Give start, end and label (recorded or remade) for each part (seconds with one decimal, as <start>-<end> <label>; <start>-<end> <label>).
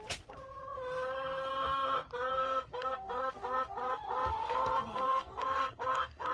0.0-2.3 recorded; 2.3-3.3 remade; 3.3-4.4 recorded; 4.4-6.3 remade